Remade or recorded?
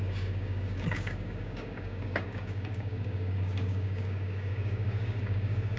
remade